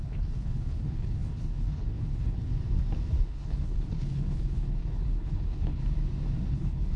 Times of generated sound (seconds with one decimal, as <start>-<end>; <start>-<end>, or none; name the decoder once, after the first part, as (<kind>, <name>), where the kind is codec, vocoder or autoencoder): 0.0-2.5 (codec, HILCodec); 3.2-5.8; 6.5-7.0